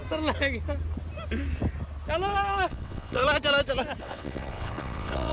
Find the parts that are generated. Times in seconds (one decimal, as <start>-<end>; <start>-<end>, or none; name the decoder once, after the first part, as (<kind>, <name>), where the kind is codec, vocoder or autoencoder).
2.7-3.2 (vocoder, WaveNeXt); 4.0-5.3